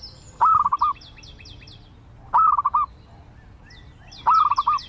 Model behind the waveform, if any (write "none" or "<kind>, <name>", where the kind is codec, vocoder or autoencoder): none